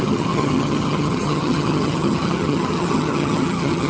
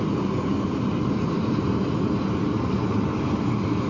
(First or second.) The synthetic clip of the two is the first